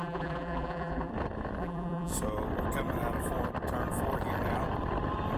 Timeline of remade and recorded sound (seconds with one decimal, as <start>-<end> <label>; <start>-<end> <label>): 0.0-1.1 remade; 1.1-1.6 recorded; 1.6-2.1 remade; 2.1-5.4 recorded